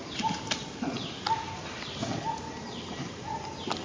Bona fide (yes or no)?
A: yes